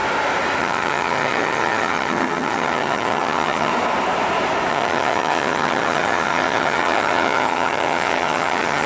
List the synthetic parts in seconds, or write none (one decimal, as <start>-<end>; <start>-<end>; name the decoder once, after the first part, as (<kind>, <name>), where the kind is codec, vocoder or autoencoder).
0.6-3.7 (vocoder, HiFi-GAN); 4.7-8.9